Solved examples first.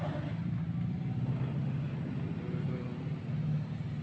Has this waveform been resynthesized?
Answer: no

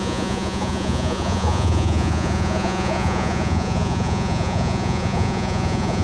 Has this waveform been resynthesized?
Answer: yes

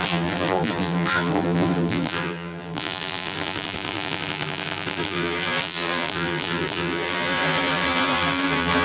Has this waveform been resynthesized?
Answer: yes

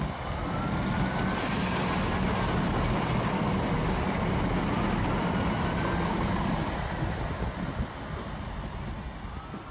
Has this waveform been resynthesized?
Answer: no